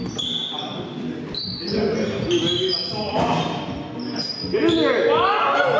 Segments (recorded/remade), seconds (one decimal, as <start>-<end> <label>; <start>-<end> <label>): 0.0-5.8 recorded